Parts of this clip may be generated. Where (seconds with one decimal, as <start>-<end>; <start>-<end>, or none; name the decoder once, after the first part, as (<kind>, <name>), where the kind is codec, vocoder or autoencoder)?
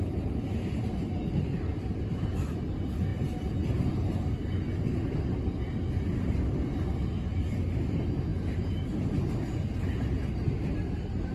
none